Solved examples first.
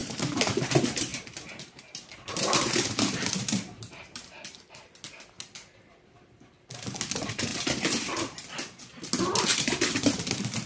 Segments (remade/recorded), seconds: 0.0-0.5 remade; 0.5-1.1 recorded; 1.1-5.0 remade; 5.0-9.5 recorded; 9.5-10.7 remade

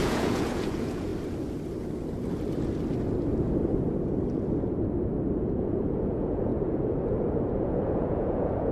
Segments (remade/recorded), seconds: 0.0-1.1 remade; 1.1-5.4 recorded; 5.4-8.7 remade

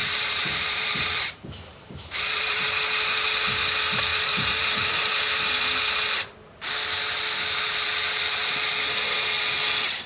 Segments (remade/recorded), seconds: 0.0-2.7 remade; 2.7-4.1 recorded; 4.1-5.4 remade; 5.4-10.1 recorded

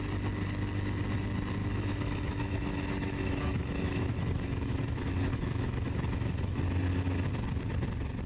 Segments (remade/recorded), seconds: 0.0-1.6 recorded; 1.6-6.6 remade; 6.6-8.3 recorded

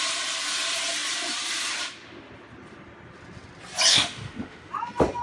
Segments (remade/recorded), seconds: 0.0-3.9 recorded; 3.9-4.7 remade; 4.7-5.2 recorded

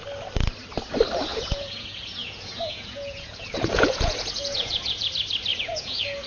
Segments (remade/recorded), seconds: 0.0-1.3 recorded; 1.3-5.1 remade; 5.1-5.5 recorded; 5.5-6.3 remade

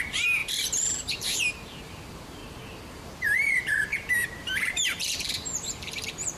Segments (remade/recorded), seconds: 0.0-2.4 remade; 2.4-2.9 recorded; 2.9-6.4 remade